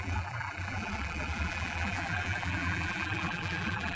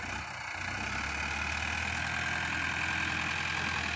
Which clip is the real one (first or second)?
second